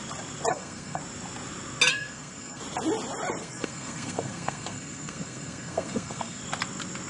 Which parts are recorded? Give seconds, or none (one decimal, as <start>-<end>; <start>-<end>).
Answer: 0.0-0.5; 1.0-1.9; 2.6-3.4; 6.4-7.1